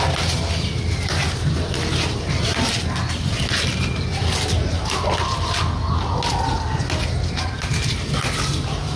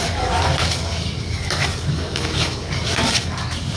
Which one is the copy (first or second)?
second